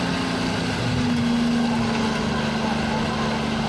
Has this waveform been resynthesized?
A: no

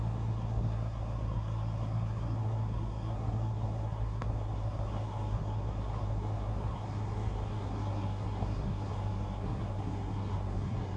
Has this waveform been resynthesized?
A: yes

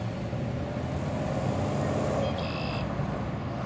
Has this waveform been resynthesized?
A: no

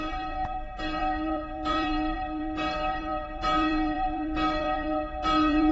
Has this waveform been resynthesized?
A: yes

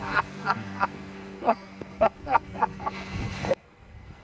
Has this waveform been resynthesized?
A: yes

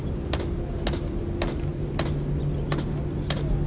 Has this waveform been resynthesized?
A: no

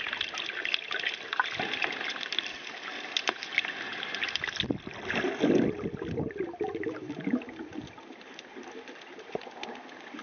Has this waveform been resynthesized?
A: no